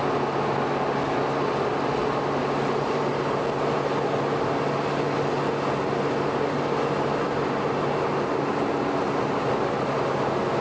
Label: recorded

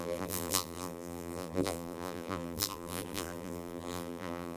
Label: remade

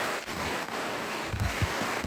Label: remade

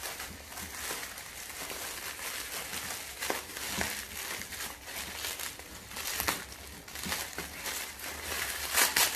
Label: recorded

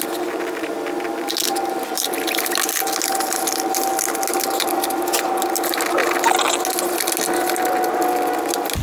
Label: recorded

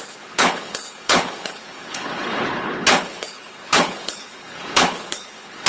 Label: remade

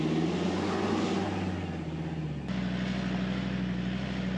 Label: recorded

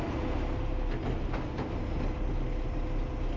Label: recorded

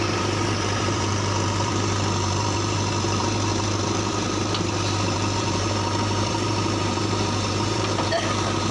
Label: remade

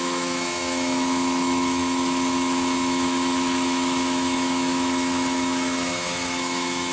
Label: remade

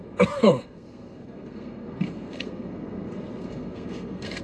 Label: remade